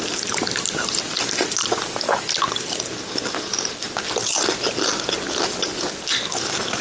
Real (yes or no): yes